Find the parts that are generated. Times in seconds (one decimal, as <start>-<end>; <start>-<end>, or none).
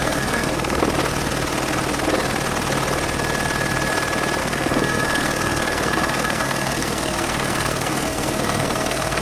0.0-0.8; 4.4-9.2